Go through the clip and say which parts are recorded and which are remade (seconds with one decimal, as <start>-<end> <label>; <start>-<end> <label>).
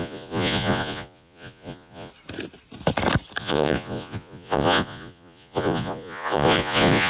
0.0-2.1 remade; 2.1-3.4 recorded; 3.4-7.1 remade